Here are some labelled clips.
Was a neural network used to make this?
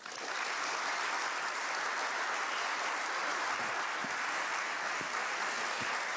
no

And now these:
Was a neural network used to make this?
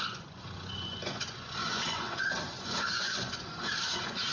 yes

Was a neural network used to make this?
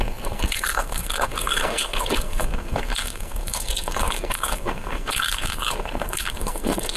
yes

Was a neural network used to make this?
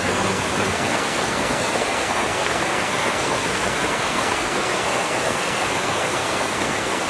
yes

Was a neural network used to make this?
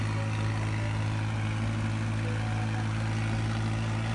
no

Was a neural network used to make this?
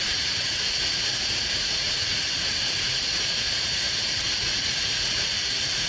yes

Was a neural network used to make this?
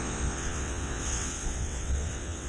yes